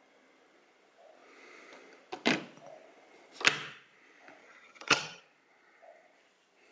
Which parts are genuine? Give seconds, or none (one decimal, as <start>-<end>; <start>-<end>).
0.0-4.4; 5.2-6.7